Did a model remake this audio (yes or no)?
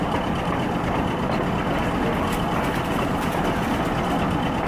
no